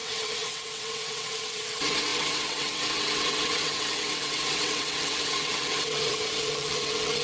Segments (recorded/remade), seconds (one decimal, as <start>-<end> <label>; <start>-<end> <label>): 0.0-7.2 remade